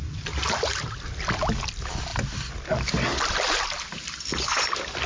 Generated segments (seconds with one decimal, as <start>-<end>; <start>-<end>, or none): none